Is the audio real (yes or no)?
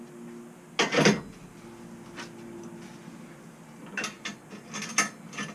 yes